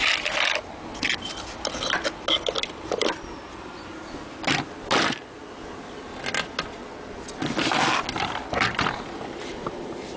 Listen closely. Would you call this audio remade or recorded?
recorded